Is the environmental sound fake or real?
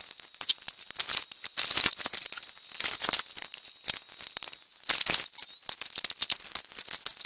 real